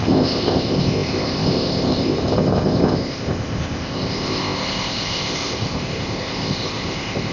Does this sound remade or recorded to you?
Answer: remade